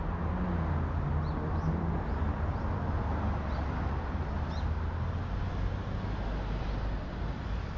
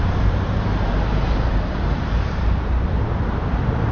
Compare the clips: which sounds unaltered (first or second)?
first